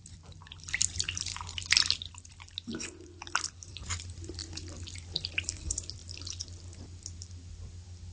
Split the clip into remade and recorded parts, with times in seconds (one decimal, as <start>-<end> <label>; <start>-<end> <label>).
0.0-1.3 remade; 1.3-2.3 recorded; 2.3-2.7 remade; 2.7-3.5 recorded; 3.5-4.4 remade; 4.4-5.5 recorded; 5.5-6.0 remade; 6.0-7.2 recorded; 7.2-8.1 remade